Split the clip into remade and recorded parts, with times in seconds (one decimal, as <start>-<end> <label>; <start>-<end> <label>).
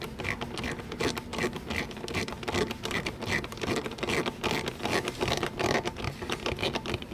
0.0-7.1 recorded